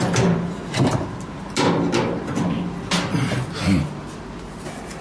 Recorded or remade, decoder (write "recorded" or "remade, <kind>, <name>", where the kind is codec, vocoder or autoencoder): recorded